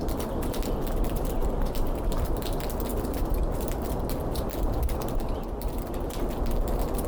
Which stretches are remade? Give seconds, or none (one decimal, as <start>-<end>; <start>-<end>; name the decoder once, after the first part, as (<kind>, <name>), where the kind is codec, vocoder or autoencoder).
1.4-2.2 (vocoder, BigVGAN v2); 2.9-4.3